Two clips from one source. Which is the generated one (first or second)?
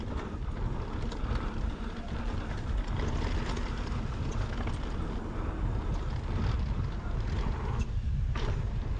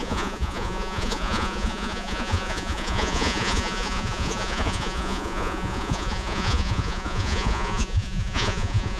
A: second